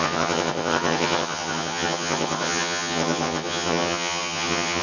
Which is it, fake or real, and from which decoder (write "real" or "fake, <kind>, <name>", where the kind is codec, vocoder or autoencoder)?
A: fake, vocoder, HiFi-GAN